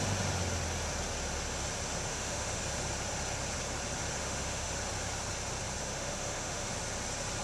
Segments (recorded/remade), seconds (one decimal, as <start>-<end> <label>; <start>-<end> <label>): 0.0-2.1 recorded; 2.1-2.6 remade; 2.6-4.2 recorded; 4.2-4.7 remade; 4.7-5.8 recorded; 5.8-6.7 remade; 6.7-7.4 recorded

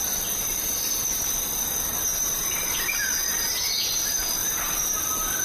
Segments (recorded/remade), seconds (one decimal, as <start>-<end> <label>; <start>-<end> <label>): 0.0-2.1 recorded; 2.1-3.9 remade; 3.9-4.4 recorded; 4.4-4.9 remade; 4.9-5.4 recorded

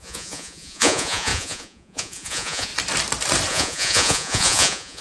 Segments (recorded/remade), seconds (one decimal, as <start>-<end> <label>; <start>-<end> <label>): 0.0-2.7 remade; 2.7-3.5 recorded; 3.5-5.0 remade

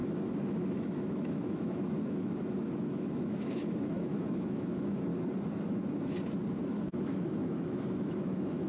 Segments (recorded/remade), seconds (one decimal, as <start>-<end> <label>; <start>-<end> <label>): 0.0-5.1 remade; 5.1-6.6 recorded; 6.6-8.7 remade

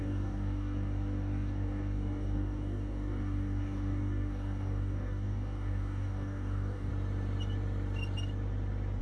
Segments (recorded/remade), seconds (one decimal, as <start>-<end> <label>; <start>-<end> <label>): 0.0-6.9 remade; 6.9-9.0 recorded

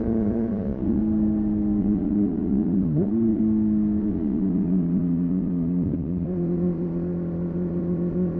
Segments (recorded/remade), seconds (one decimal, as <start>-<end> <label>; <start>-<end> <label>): 0.0-1.0 remade; 1.0-1.8 recorded; 1.8-3.4 remade; 3.4-4.0 recorded; 4.0-8.4 remade

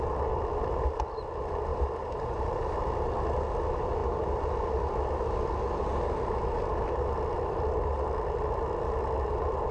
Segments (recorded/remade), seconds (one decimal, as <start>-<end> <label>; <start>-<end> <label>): 0.0-1.7 recorded; 1.7-2.8 remade; 2.8-9.7 recorded